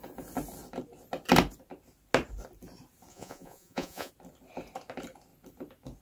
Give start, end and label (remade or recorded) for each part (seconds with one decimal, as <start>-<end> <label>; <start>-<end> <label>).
0.0-3.1 recorded; 3.1-4.1 remade; 4.1-6.0 recorded

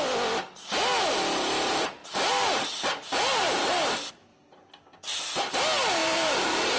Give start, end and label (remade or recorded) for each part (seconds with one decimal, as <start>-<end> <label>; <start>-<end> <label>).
0.0-2.0 recorded; 2.0-3.7 remade; 3.7-6.0 recorded; 6.0-6.8 remade

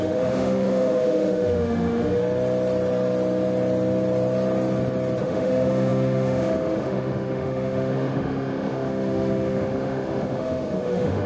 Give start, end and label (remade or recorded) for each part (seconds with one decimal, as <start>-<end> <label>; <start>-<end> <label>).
0.0-2.2 remade; 2.2-5.2 recorded; 5.2-11.3 remade

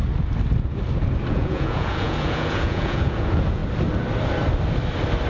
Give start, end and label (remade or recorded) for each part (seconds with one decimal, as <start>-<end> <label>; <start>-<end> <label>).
0.0-1.3 recorded; 1.3-3.6 remade; 3.6-5.3 recorded

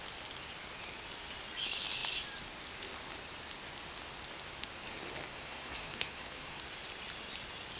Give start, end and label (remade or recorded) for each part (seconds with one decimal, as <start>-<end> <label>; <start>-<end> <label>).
0.0-5.3 recorded; 5.3-6.6 remade; 6.6-7.8 recorded

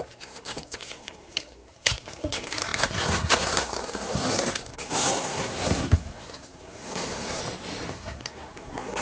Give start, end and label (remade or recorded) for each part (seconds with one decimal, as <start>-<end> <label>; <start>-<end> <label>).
0.0-7.4 remade; 7.4-7.9 recorded; 7.9-9.0 remade

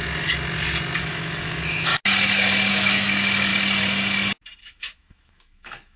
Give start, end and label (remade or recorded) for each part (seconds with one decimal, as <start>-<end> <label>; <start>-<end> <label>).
0.0-1.0 recorded; 1.0-1.9 remade; 1.9-2.7 recorded; 2.7-3.5 remade; 3.5-4.6 recorded; 4.6-6.0 remade

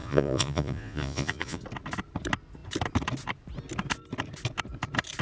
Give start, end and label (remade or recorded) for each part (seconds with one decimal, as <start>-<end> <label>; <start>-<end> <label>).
0.0-1.6 remade; 1.6-5.2 recorded